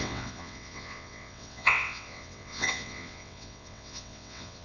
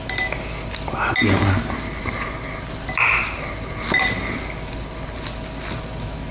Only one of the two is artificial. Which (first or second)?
first